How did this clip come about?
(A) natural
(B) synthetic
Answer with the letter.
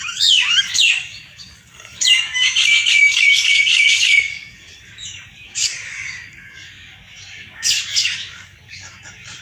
B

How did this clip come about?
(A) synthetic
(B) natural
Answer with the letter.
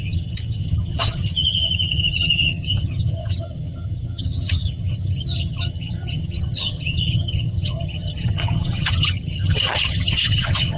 A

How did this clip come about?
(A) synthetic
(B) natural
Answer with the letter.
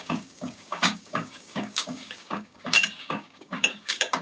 A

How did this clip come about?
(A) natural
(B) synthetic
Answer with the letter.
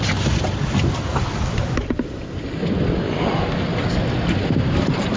A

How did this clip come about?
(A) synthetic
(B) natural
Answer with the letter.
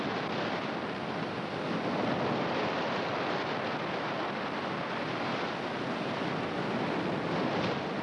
B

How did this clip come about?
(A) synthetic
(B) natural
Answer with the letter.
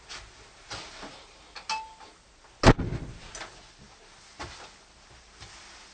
B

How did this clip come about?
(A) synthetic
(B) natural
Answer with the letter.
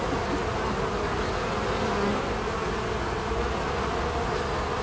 B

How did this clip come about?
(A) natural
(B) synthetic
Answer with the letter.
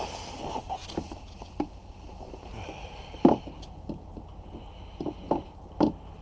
A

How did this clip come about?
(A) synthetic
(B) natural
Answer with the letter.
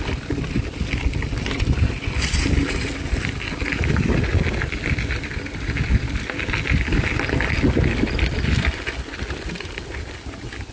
B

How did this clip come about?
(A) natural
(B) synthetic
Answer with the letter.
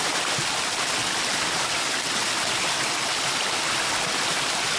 A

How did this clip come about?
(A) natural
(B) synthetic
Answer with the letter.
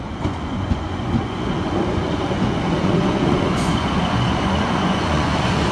B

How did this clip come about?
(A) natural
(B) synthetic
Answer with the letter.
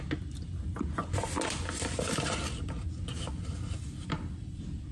A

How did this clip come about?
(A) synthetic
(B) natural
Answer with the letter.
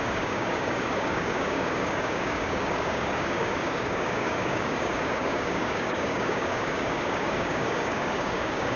A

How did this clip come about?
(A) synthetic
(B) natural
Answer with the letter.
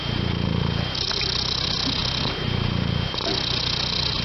B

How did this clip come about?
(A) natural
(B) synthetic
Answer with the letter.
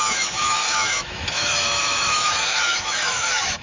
B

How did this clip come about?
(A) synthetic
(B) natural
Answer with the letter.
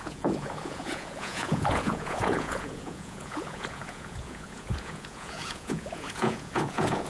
A